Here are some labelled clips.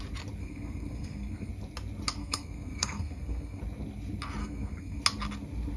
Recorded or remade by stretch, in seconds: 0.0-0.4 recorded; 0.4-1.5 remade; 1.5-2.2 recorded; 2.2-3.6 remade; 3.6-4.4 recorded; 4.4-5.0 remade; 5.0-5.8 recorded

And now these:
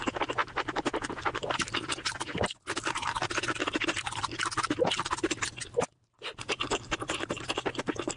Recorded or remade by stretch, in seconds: 0.0-8.2 recorded

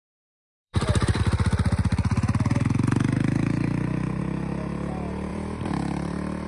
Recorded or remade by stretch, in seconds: 0.0-1.2 remade; 1.2-5.3 recorded; 5.3-6.5 remade

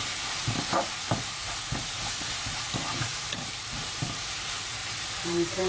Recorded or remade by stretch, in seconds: 0.0-0.7 remade; 0.7-2.2 recorded; 2.2-5.7 remade

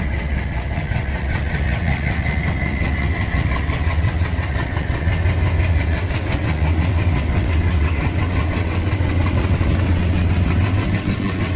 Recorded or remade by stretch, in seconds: 0.0-5.1 remade; 5.1-5.7 recorded; 5.7-11.6 remade